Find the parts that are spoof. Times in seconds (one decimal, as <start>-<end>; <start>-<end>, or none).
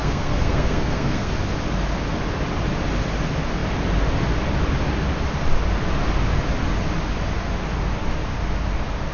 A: 0.0-1.3